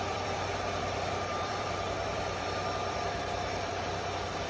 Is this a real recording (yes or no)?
no